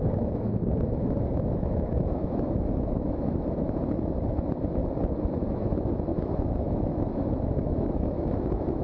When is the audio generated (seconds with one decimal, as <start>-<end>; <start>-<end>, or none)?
0.0-4.8; 5.5-8.8